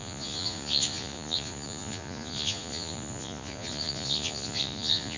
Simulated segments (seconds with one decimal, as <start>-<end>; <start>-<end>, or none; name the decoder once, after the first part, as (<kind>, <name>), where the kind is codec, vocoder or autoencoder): 0.0-5.2 (vocoder, Vocos)